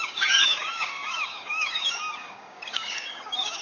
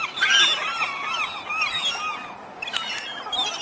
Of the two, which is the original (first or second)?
second